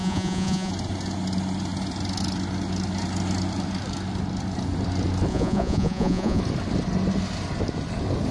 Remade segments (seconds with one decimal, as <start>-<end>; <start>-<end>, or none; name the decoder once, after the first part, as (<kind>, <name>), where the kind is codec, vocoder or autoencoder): 0.0-0.7 (vocoder, Vocos); 5.3-6.4